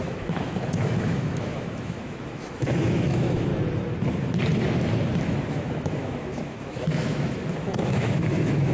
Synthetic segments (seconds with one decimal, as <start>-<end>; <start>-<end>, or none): 0.0-3.5; 5.5-8.7